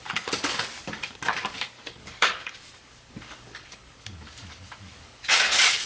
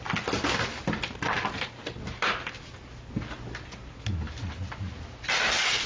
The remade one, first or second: first